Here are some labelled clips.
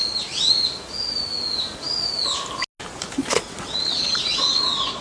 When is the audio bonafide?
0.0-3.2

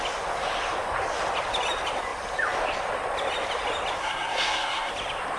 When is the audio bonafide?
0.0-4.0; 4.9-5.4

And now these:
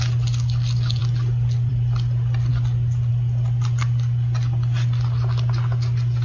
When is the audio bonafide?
0.0-6.2

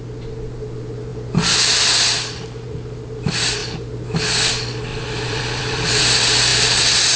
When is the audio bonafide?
0.0-4.9; 6.0-7.2

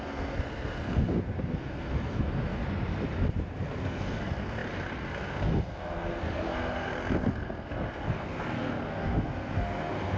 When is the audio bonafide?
2.6-3.6

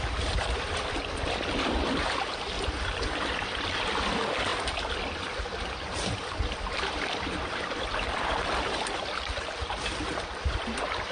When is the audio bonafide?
none

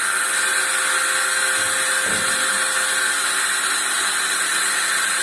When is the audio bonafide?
0.0-5.2

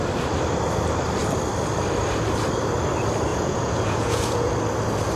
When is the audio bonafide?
0.0-3.3; 4.5-5.2